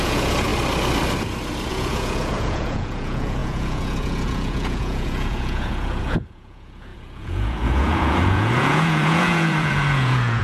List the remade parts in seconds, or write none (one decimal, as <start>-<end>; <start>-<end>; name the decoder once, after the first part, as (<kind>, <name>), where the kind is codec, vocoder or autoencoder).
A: 0.0-0.5 (vocoder, Vocos); 1.7-10.4